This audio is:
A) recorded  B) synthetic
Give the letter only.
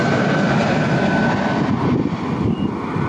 A